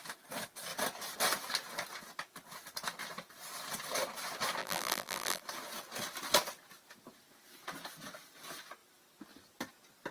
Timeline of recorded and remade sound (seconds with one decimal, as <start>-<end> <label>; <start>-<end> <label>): 0.0-4.6 recorded; 4.6-5.4 remade; 5.4-10.1 recorded